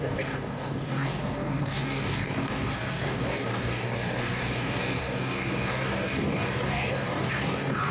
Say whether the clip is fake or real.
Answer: fake